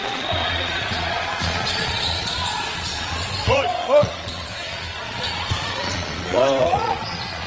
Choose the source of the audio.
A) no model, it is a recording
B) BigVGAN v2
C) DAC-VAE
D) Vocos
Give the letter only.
D